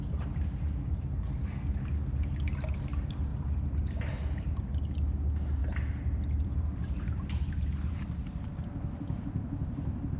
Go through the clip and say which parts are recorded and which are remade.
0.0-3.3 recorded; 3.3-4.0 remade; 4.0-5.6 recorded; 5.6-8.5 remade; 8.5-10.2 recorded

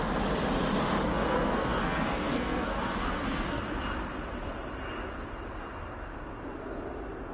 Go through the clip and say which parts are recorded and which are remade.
0.0-1.1 recorded; 1.1-3.6 remade; 3.6-7.3 recorded